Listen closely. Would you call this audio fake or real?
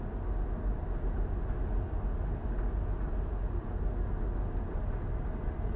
real